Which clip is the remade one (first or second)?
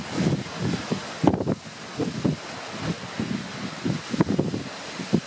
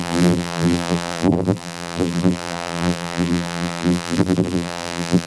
second